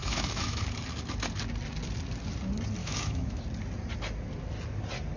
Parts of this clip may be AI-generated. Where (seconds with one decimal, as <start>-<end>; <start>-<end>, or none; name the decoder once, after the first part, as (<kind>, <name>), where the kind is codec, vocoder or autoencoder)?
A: 0.0-0.6 (autoencoder, DAC-VAE); 2.8-3.4